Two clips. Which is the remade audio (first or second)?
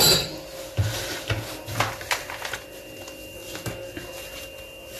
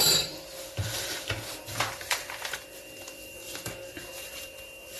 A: second